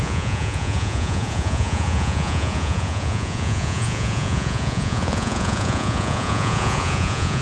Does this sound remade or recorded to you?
remade